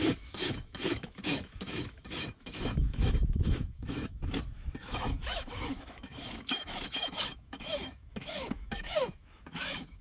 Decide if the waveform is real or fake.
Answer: fake